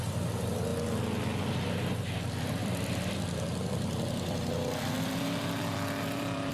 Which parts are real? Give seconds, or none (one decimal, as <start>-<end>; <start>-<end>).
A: 0.0-2.6